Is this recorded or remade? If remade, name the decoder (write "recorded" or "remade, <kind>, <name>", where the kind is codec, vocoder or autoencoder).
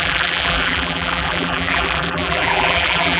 remade, vocoder, BigVGAN v2